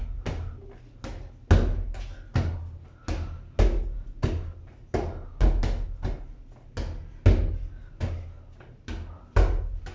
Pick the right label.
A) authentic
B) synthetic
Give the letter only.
A